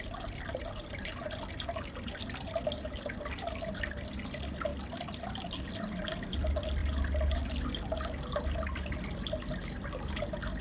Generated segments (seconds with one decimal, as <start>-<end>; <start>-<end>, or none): none